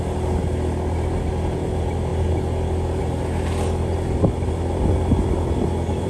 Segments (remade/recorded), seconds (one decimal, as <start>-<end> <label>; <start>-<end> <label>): 0.0-6.1 recorded